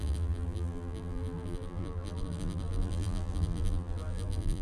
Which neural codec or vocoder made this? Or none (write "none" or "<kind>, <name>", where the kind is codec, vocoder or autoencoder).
vocoder, BigVGAN v2